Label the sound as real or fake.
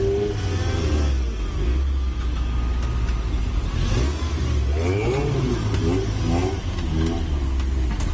real